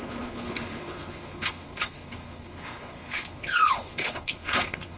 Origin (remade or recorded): remade